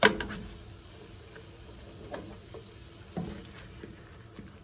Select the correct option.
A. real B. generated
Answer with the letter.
A